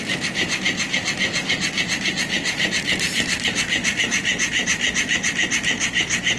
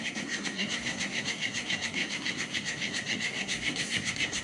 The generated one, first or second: second